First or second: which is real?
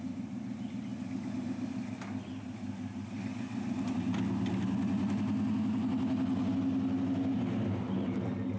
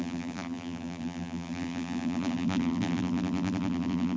first